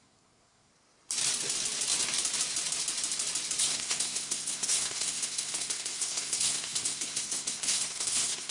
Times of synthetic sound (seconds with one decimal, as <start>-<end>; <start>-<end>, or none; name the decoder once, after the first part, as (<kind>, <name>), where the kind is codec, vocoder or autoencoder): 0.0-0.7 (codec, SNAC); 3.6-8.5